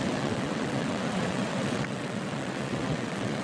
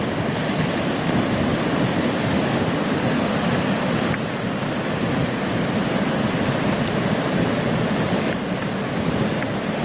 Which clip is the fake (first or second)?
first